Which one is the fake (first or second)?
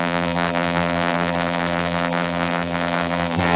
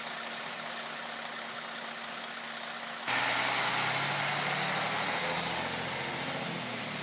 first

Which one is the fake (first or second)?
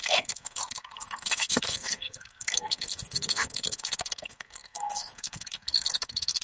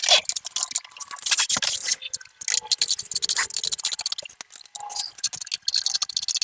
first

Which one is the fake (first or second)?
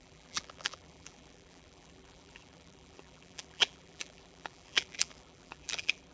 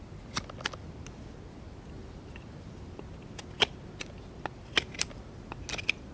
first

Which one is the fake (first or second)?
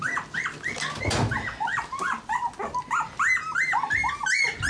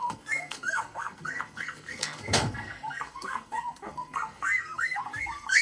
second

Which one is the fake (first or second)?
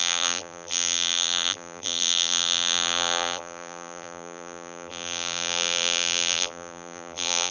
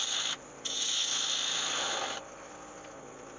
first